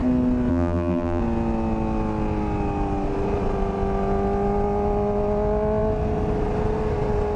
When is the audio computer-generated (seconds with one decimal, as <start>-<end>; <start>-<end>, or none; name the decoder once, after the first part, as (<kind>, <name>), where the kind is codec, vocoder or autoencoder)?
0.5-1.2 (vocoder, BigVGAN v2)